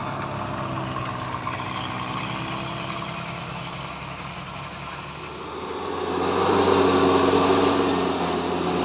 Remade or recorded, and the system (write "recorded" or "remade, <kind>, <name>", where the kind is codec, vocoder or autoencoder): recorded